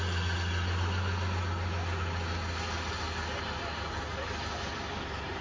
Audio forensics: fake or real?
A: real